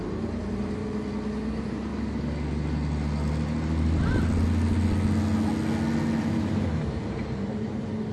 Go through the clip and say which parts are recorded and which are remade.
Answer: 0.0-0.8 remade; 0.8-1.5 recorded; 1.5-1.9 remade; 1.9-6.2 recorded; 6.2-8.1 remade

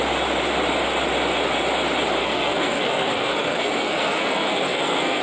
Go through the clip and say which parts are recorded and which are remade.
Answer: 0.0-2.2 recorded; 2.2-5.2 remade

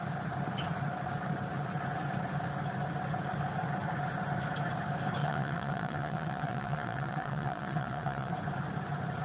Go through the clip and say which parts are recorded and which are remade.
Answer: 0.0-5.2 recorded; 5.2-8.3 remade; 8.3-9.2 recorded

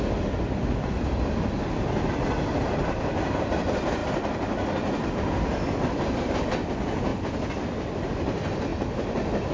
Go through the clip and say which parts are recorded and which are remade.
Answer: 0.0-9.5 recorded

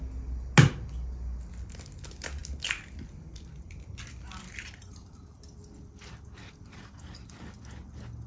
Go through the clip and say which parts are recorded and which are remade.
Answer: 0.0-8.3 recorded

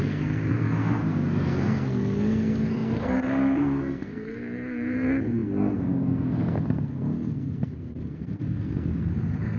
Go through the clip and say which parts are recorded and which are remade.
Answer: 0.0-9.6 remade

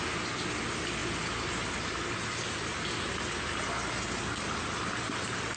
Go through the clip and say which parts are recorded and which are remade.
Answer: 0.0-5.6 recorded